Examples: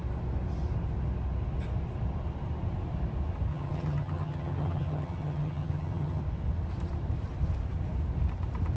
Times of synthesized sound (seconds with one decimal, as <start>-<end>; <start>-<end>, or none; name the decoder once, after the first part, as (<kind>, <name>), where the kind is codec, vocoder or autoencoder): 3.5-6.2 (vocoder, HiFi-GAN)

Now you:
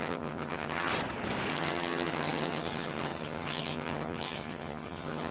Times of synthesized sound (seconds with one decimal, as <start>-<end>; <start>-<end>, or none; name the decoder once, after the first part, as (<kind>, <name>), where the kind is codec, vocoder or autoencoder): 0.0-0.9 (vocoder, HiFi-GAN); 1.5-5.3

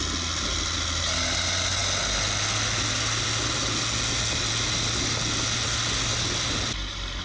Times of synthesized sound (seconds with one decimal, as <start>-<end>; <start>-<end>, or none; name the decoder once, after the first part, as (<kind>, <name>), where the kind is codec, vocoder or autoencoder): none

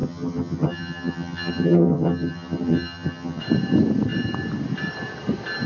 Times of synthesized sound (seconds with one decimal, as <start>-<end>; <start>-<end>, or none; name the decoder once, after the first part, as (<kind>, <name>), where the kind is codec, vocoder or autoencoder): 0.0-3.4 (vocoder, HiFi-GAN)

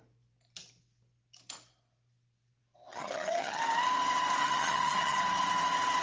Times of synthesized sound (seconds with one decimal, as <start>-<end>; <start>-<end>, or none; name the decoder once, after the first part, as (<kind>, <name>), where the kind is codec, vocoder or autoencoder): 2.9-3.6 (vocoder, HiFi-GAN); 4.4-5.2

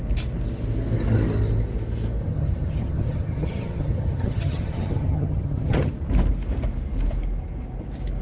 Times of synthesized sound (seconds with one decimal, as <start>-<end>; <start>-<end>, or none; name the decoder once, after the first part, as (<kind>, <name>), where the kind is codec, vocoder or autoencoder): 2.2-5.9 (vocoder, HiFi-GAN)

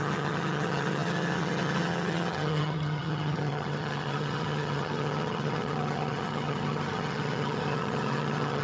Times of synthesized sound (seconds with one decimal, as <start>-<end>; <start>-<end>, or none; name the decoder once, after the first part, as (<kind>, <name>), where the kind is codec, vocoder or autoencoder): 0.0-8.6 (vocoder, HiFi-GAN)